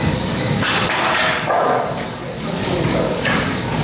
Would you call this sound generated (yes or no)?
yes